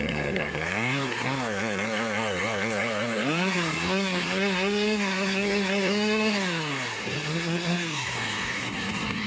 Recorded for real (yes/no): no